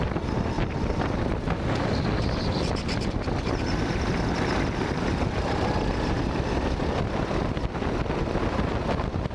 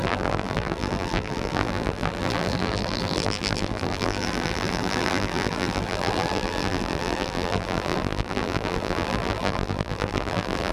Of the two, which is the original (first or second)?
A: first